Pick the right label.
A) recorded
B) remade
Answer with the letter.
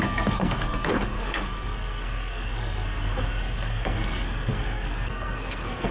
B